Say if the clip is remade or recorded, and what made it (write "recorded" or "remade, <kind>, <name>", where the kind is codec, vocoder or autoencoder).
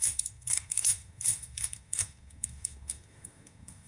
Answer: remade, codec, SNAC